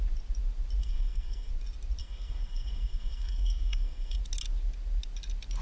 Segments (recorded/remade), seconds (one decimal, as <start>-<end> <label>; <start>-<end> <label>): 0.0-0.8 recorded; 0.8-1.5 remade; 1.5-2.0 recorded; 2.0-4.2 remade; 4.2-5.6 recorded

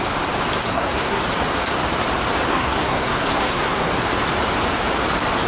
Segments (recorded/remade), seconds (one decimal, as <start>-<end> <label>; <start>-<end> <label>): 0.0-0.7 recorded; 0.7-1.2 remade; 1.2-2.5 recorded; 2.5-3.9 remade; 3.9-5.5 recorded

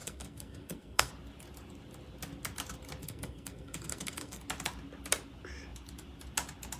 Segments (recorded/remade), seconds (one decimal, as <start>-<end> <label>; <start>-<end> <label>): 0.0-1.1 remade; 1.1-3.0 recorded; 3.0-4.4 remade; 4.4-6.8 recorded

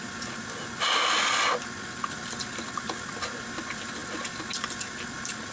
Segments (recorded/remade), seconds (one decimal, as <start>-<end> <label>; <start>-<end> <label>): 0.0-5.5 recorded

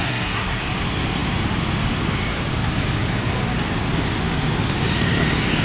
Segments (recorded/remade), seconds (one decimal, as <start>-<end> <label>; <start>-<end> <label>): 0.0-0.6 remade; 0.6-5.6 recorded

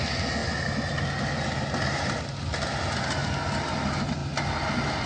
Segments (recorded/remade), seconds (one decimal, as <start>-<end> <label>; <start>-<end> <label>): 0.0-5.1 recorded

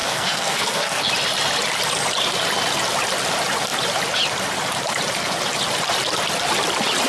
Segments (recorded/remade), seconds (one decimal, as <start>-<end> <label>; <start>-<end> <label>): 0.0-1.0 remade; 1.0-7.1 recorded